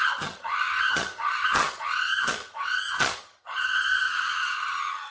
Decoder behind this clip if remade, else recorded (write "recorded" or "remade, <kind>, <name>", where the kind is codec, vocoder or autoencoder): remade, vocoder, HiFi-GAN